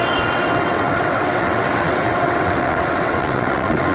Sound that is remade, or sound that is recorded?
remade